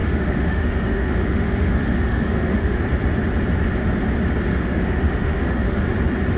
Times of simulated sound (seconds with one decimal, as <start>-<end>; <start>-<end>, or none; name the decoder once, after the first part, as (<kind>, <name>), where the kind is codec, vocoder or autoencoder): 0.0-2.8 (autoencoder, DAC-VAE); 4.5-5.8